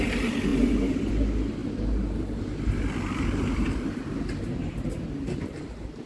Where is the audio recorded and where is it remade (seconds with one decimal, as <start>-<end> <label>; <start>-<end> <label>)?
0.0-6.1 recorded